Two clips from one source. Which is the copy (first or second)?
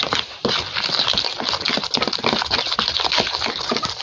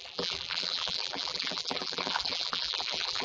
second